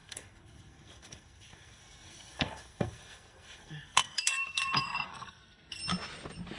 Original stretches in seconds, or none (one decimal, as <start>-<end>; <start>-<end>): 5.8-6.6